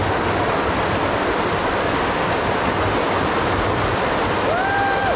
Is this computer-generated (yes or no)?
no